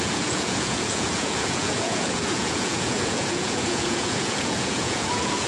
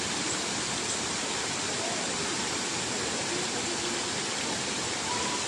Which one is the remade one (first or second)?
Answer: first